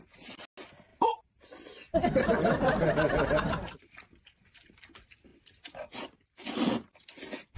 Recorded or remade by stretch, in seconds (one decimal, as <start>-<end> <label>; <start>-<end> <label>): 0.0-0.9 recorded; 0.9-3.5 remade; 3.5-7.6 recorded